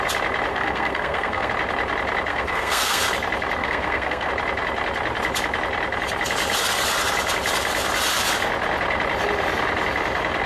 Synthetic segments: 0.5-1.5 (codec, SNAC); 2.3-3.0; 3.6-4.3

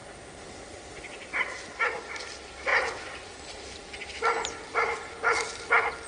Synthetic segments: none

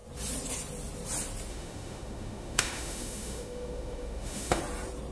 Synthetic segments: 1.5-4.6 (autoencoder, DAC-VAE)

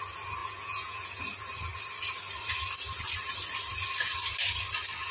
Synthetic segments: 0.4-1.2 (vocoder, Vocos)

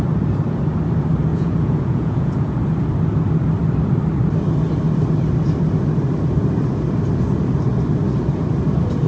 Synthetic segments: 1.3-2.6 (vocoder, Vocos)

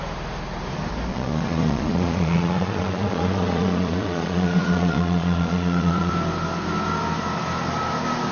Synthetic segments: 1.1-6.1 (vocoder, Vocos)

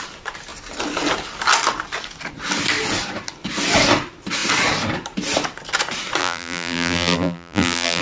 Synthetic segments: 6.2-8.0 (vocoder, BigVGAN v2)